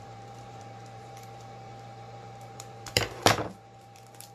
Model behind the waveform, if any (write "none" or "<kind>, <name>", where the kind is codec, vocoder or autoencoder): vocoder, BigVGAN v2